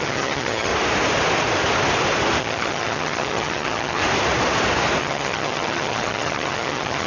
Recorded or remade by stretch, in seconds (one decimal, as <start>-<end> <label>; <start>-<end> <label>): 0.0-0.7 remade; 0.7-2.4 recorded; 2.4-4.0 remade; 4.0-5.0 recorded; 5.0-7.1 remade